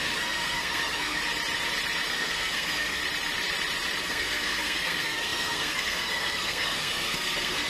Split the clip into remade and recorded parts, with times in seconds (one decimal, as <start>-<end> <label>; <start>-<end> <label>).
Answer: 0.0-1.2 remade; 1.2-2.1 recorded; 2.1-3.0 remade; 3.0-4.0 recorded; 4.0-7.7 remade